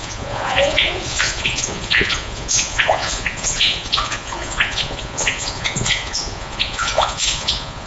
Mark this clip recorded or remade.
remade